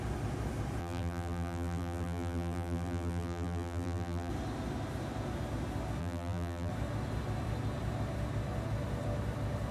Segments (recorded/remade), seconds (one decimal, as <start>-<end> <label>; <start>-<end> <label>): 0.0-0.8 recorded; 0.8-4.3 remade; 4.3-6.0 recorded; 6.0-6.7 remade; 6.7-9.7 recorded